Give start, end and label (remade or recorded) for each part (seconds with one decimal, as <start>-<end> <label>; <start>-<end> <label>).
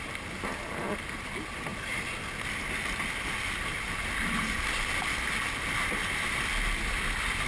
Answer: 0.0-7.5 recorded